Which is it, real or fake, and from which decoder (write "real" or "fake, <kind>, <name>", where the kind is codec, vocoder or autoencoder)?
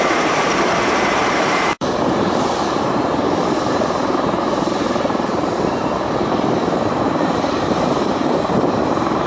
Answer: fake, vocoder, BigVGAN v2